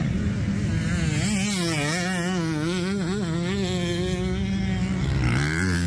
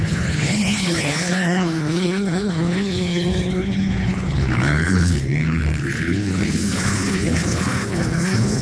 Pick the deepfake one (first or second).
second